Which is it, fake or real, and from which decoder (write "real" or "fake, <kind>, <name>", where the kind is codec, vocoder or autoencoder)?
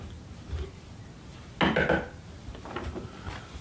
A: real